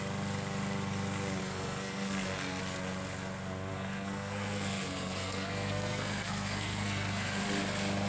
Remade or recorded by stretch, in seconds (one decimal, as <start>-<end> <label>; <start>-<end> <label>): 0.0-1.4 recorded; 1.4-2.6 remade; 2.6-3.7 recorded; 3.7-7.4 remade; 7.4-8.1 recorded